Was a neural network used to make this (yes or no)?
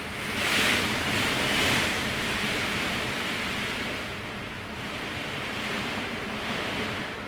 yes